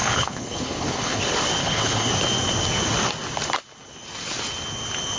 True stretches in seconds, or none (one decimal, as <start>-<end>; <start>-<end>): 1.2-1.6; 2.1-5.2